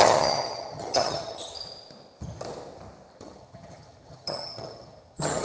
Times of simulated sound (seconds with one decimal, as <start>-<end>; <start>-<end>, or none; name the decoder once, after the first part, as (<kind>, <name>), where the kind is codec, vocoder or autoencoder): 0.0-1.5 (vocoder, HiFi-GAN); 3.2-5.4